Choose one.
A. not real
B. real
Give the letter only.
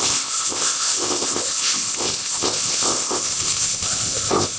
A